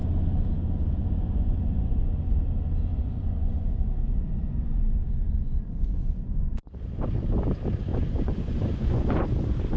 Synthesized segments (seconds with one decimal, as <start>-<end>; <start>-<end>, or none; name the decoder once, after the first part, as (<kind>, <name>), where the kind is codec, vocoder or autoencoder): 1.0-2.4 (vocoder, Vocos); 2.9-6.7; 7.9-9.3